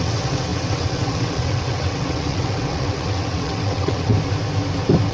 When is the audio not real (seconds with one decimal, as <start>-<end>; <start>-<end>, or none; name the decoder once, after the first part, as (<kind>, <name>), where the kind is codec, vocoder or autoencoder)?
0.0-4.1 (vocoder, WaveNeXt)